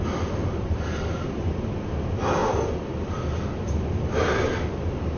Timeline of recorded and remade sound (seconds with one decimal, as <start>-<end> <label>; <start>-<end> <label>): 0.0-0.4 recorded; 0.4-1.7 remade; 1.7-2.4 recorded; 2.4-4.4 remade; 4.4-5.2 recorded